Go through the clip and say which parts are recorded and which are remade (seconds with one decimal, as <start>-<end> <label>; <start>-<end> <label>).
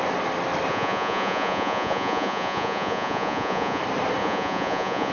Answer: 0.0-0.7 recorded; 0.7-3.8 remade; 3.8-4.2 recorded; 4.2-5.1 remade